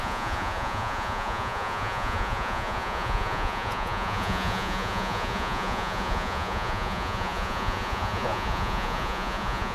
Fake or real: fake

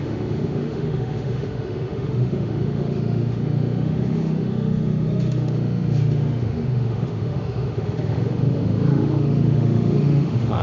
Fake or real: fake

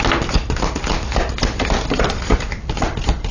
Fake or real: real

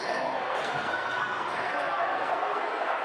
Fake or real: fake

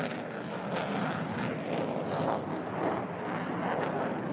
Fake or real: real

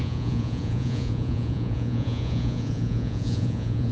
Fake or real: fake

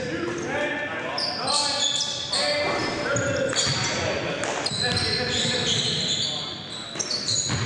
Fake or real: real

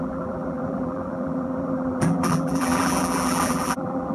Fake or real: fake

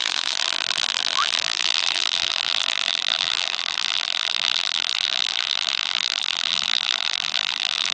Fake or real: fake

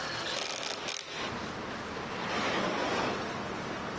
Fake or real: real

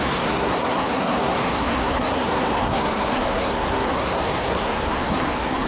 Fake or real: fake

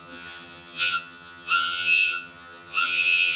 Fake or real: fake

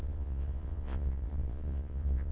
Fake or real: fake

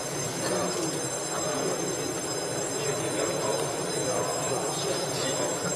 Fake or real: real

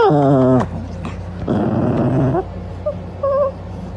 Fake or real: real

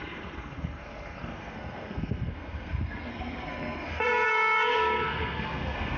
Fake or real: fake